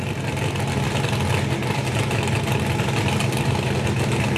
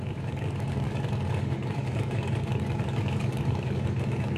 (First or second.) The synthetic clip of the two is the second